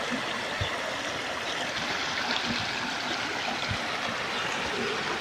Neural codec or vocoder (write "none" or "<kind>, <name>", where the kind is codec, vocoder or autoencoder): none